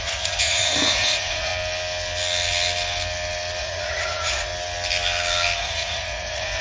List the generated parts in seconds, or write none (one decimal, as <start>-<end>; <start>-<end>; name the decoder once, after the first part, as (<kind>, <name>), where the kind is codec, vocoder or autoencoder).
0.0-1.5 (vocoder, Vocos); 3.6-4.5; 5.6-6.6